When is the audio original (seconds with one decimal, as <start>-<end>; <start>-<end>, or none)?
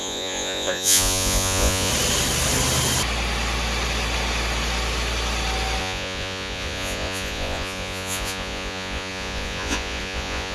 1.9-5.8